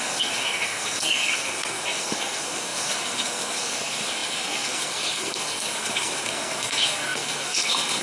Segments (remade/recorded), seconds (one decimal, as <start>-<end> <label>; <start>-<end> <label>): 0.0-8.0 remade